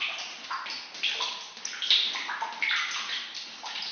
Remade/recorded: recorded